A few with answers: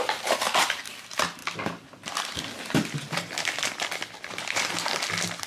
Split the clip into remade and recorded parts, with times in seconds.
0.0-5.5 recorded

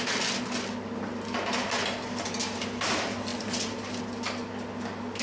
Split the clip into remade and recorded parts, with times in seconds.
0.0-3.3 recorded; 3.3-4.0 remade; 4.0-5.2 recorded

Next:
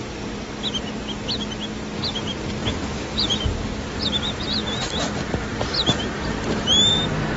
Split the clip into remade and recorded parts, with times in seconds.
0.0-2.6 recorded; 2.6-7.0 remade; 7.0-7.4 recorded

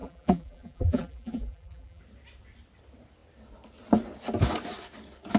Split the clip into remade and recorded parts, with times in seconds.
0.0-2.0 remade; 2.0-5.4 recorded

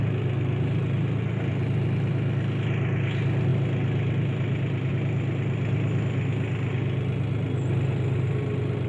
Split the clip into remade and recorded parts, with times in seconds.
0.0-8.9 recorded

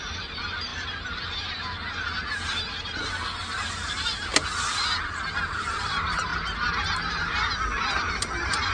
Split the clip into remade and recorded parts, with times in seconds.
0.0-0.7 remade; 0.7-3.7 recorded; 3.7-4.3 remade; 4.3-5.0 recorded; 5.0-6.3 remade; 6.3-8.0 recorded; 8.0-8.7 remade